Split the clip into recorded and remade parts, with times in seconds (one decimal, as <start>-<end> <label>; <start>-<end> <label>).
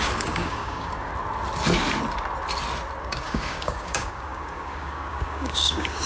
0.0-1.1 remade; 1.1-3.0 recorded; 3.0-6.1 remade